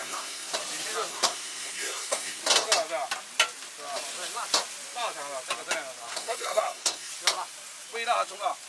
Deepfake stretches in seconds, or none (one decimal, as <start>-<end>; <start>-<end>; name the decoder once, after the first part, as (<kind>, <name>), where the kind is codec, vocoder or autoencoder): 0.0-0.5 (codec, SNAC); 1.1-2.4; 6.1-7.1